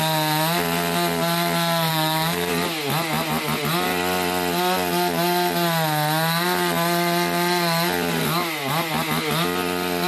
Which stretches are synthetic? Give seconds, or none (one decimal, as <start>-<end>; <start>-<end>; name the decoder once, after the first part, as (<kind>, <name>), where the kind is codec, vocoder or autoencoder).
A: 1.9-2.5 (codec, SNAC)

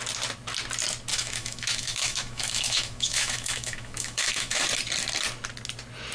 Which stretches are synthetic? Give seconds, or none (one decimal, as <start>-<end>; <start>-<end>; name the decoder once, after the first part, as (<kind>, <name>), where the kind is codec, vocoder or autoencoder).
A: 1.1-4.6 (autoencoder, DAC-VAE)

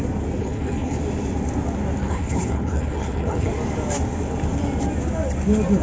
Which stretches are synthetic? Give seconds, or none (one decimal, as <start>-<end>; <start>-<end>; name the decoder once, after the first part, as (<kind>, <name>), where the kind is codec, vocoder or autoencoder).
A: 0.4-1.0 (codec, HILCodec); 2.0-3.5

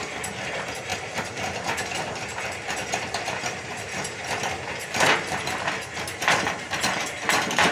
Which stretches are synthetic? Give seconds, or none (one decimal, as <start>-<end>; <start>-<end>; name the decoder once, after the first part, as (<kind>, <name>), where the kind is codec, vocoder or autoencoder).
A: 0.0-7.7 (vocoder, BigVGAN v2)

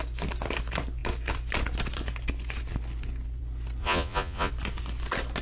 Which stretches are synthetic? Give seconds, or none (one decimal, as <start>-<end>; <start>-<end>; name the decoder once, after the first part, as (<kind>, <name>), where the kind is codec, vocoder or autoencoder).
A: 3.8-4.5 (vocoder, Vocos)